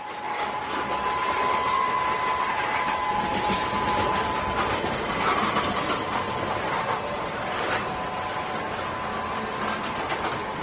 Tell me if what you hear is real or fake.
real